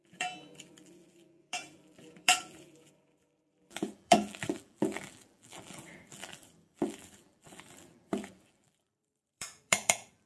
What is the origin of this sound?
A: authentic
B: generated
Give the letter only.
B